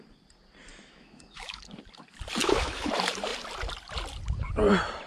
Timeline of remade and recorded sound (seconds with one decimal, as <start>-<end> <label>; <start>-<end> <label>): 0.0-0.7 recorded; 0.7-1.6 remade; 1.6-2.4 recorded; 2.4-2.9 remade; 2.9-5.1 recorded